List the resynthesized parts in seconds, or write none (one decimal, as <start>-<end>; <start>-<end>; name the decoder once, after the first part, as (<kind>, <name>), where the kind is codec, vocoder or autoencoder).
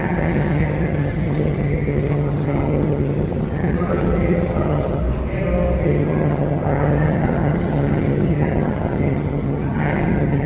0.0-5.0 (vocoder, HiFi-GAN); 5.8-10.5